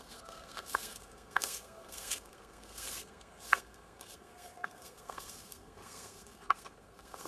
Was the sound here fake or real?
fake